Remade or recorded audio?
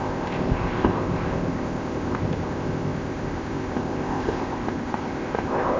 remade